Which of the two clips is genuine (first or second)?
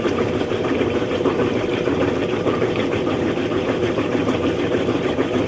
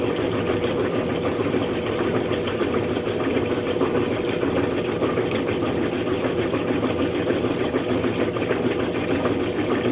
second